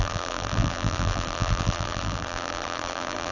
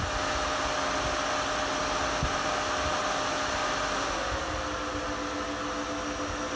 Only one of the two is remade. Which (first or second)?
first